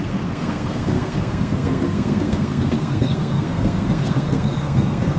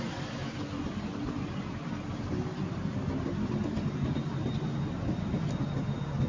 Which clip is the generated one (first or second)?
first